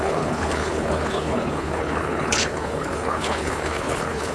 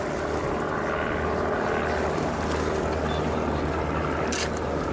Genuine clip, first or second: second